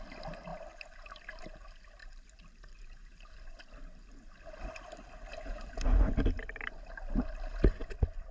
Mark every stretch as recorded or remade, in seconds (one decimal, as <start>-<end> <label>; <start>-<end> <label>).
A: 0.0-2.0 recorded; 2.0-2.9 remade; 2.9-5.3 recorded; 5.3-6.1 remade; 6.1-8.3 recorded